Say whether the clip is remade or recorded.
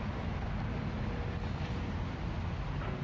recorded